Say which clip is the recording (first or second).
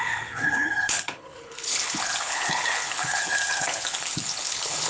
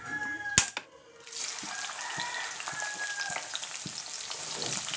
second